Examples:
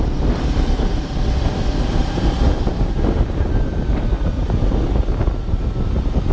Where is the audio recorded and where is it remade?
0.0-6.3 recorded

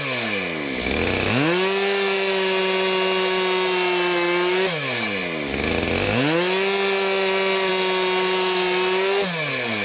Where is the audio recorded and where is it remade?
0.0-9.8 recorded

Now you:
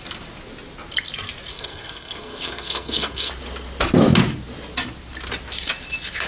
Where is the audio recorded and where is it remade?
0.0-1.5 recorded; 1.5-3.3 remade; 3.3-6.3 recorded

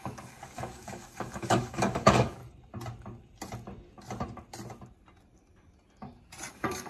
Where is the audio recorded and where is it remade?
0.0-2.4 remade; 2.4-6.5 recorded; 6.5-6.9 remade